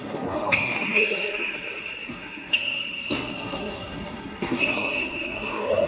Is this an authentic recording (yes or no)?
no